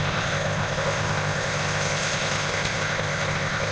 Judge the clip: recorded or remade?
remade